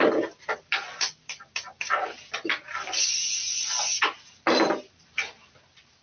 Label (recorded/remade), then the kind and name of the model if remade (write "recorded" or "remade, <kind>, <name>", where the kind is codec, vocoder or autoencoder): recorded